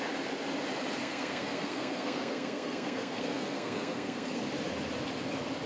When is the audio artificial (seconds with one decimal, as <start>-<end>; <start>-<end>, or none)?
1.0-4.4